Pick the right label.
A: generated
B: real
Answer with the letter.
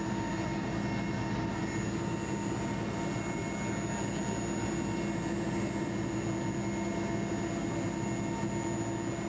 B